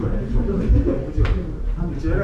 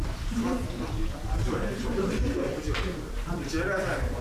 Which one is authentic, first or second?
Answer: first